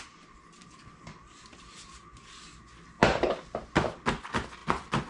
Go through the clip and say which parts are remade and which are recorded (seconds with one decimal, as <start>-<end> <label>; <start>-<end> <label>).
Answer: 0.0-3.0 recorded; 3.0-3.6 remade; 3.6-5.1 recorded